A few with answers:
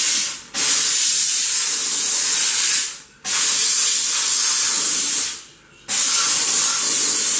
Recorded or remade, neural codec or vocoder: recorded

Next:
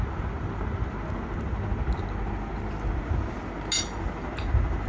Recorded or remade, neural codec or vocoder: recorded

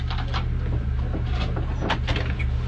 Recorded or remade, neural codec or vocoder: recorded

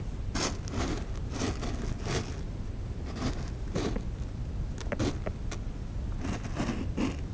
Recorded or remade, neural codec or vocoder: recorded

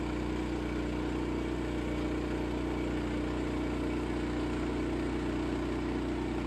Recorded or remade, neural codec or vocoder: recorded